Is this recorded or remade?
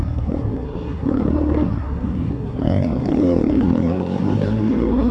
remade